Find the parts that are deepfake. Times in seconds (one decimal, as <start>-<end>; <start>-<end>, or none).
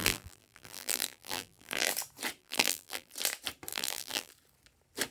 0.0-1.9; 2.4-3.1; 3.7-4.3